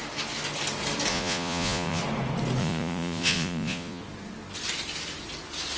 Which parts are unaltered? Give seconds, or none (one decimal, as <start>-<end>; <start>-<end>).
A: 0.0-1.1; 2.0-2.6; 4.0-5.8